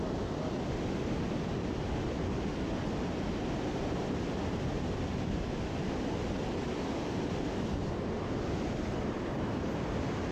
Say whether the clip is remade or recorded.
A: recorded